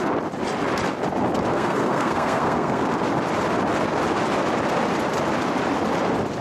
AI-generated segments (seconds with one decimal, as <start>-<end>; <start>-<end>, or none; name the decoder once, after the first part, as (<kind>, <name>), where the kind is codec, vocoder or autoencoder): 1.5-2.8 (codec, SNAC)